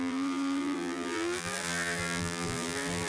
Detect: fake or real fake